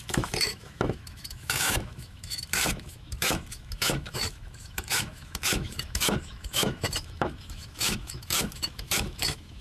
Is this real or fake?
fake